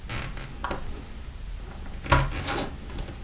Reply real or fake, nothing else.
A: real